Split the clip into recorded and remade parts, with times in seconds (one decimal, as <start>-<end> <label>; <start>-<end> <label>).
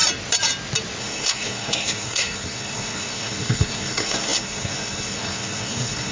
0.0-1.0 recorded; 1.0-6.1 remade